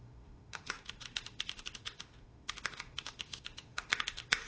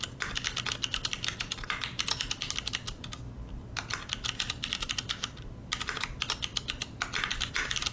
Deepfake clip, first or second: first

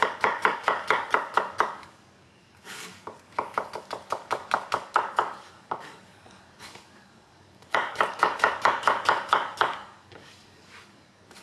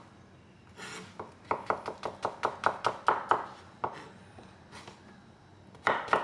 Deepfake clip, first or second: first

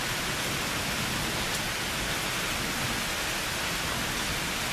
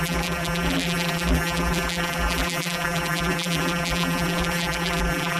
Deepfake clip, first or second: second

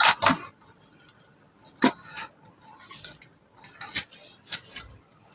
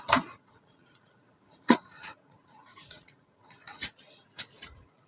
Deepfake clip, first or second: second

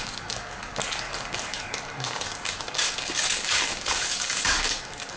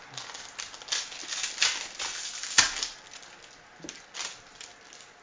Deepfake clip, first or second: first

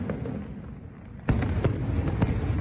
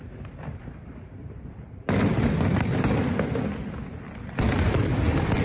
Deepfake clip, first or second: second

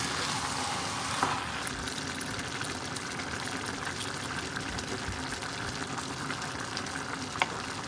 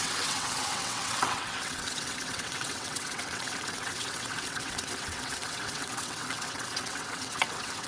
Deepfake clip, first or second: second